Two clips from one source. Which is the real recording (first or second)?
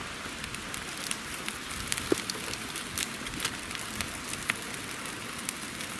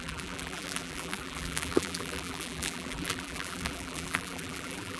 first